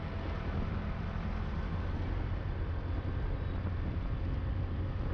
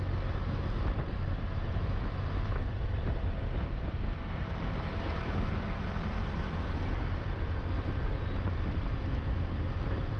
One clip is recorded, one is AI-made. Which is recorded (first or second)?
first